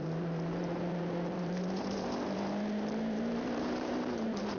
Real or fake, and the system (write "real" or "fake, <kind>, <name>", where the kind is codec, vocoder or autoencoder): fake, vocoder, BigVGAN v2